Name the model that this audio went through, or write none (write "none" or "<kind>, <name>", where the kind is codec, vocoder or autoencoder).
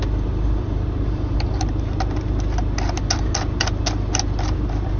none